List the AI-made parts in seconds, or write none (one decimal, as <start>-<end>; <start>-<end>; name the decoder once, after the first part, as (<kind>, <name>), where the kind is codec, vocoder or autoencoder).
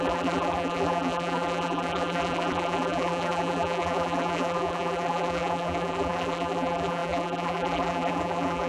0.0-8.7 (vocoder, BigVGAN v2)